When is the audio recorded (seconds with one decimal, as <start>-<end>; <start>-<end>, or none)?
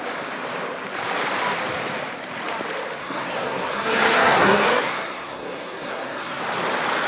0.0-3.0; 6.4-7.1